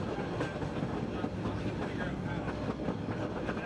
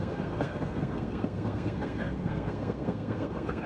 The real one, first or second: first